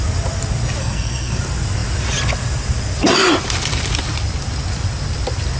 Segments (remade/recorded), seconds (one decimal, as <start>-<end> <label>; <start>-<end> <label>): 0.0-0.8 recorded; 0.8-1.4 remade; 1.4-5.6 recorded